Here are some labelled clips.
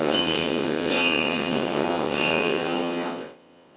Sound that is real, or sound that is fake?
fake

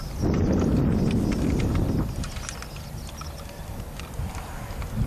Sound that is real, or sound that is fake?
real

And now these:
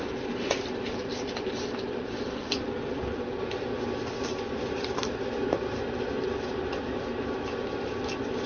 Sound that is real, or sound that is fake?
real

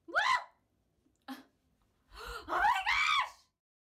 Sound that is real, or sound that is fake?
real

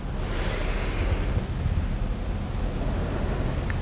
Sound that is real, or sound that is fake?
real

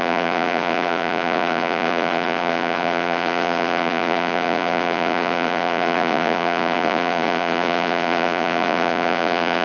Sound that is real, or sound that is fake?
fake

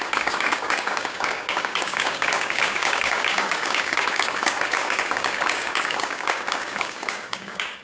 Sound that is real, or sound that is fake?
fake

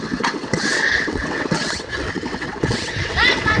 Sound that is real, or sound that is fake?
fake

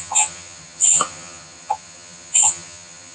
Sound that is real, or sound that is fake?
fake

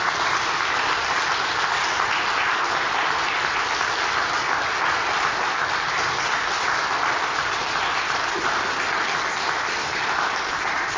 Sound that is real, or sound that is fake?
real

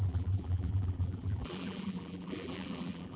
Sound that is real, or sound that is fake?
fake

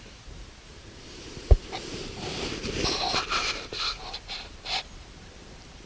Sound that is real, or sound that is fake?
fake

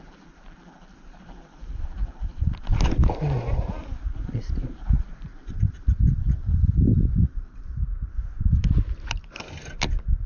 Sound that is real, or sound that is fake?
fake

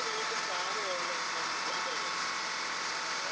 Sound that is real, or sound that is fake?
real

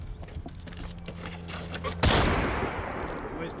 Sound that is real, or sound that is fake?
real